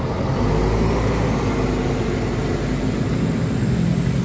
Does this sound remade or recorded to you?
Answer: recorded